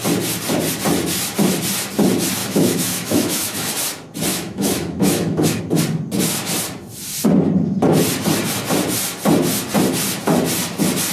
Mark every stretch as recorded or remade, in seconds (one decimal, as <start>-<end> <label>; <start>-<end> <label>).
0.0-2.4 recorded; 2.4-3.7 remade; 3.7-4.3 recorded; 4.3-5.6 remade; 5.6-11.1 recorded